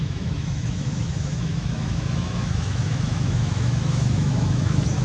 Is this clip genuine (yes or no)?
no